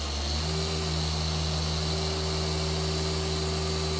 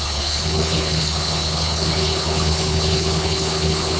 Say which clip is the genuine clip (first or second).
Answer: first